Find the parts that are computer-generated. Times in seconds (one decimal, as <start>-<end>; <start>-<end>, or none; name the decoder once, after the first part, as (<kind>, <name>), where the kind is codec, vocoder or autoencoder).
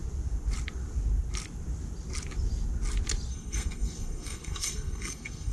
3.3-5.5 (codec, SNAC)